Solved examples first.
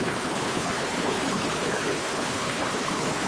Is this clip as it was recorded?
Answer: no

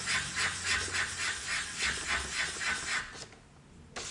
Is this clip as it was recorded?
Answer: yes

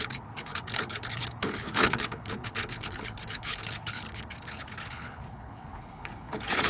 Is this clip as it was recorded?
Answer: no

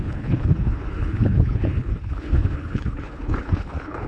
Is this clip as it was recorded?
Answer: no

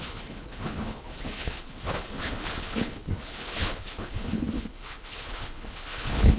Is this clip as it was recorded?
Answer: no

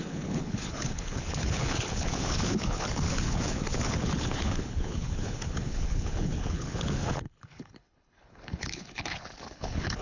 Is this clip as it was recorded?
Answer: no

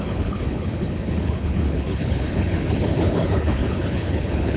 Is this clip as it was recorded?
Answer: no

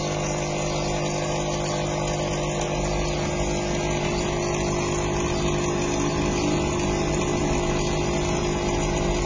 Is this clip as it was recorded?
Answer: yes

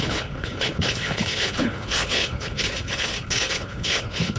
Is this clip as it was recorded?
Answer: no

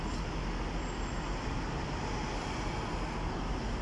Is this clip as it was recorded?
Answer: yes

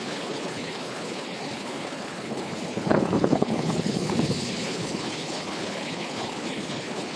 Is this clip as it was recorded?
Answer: no